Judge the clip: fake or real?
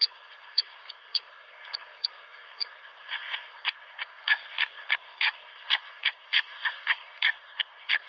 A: fake